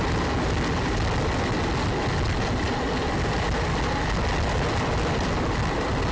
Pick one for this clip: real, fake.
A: real